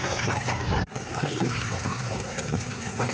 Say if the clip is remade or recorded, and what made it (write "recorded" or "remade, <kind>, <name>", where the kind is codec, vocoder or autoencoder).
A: remade, codec, SNAC